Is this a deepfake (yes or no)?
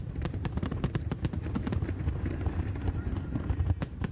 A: yes